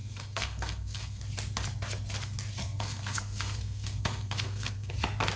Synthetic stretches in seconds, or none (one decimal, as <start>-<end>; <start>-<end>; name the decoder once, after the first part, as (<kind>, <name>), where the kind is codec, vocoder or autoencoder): 0.0-1.2 (codec, SNAC); 2.6-4.9